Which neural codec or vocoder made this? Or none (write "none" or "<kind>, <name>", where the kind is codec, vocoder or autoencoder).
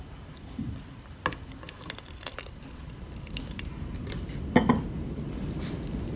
none